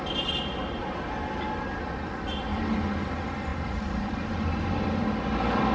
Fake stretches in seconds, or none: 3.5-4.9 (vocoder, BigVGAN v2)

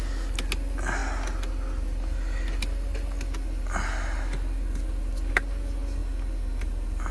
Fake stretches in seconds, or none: none

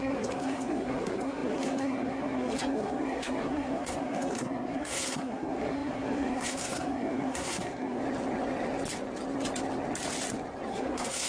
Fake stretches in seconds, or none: 0.0-8.0 (codec, SNAC); 10.7-11.3

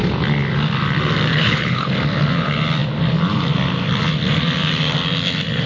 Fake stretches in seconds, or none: 1.3-1.9 (codec, HILCodec)

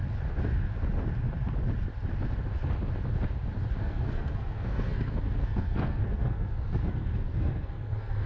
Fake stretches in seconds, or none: 3.8-8.3 (codec, SNAC)